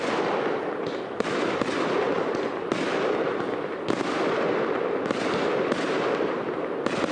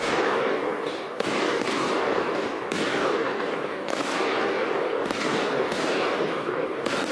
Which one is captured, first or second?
first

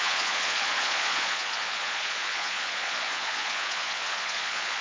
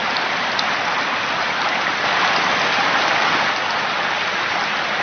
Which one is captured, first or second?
second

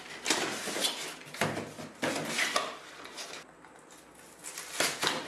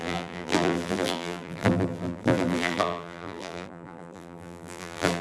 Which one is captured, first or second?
first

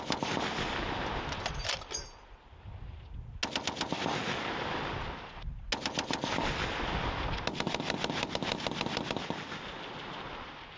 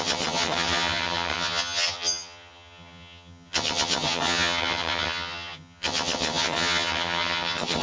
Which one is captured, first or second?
first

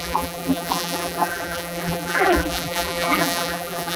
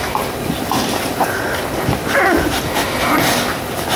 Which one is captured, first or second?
second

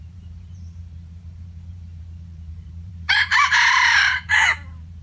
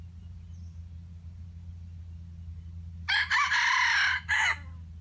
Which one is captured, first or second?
second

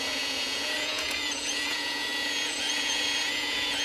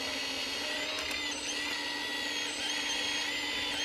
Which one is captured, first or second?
second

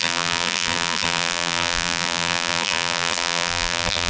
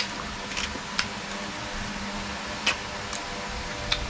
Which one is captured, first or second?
second